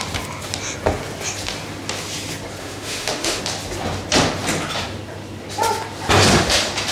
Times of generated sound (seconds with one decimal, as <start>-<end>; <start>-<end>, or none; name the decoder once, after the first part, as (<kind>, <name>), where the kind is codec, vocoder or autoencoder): 2.6-3.4 (autoencoder, DAC-VAE)